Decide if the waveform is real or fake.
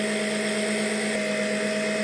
real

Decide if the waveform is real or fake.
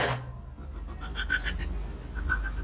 real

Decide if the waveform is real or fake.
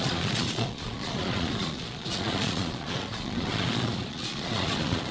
fake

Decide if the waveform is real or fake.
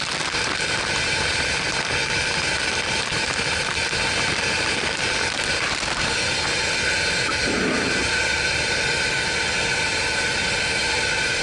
real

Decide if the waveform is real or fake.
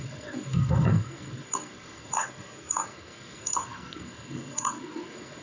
fake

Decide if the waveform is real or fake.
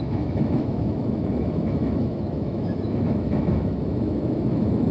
fake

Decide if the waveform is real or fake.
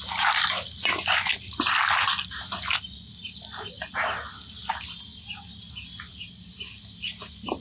real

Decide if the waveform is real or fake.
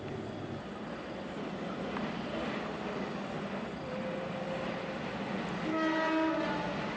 real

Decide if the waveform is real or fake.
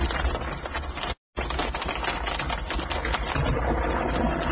real